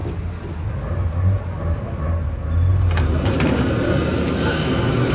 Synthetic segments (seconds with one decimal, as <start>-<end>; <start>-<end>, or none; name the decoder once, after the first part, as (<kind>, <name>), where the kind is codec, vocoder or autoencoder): 2.7-3.7 (vocoder, BigVGAN v2)